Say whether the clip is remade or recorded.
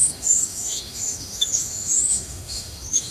remade